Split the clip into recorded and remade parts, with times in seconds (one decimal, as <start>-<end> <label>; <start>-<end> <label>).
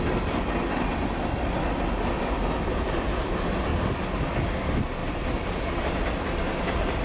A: 0.0-7.0 recorded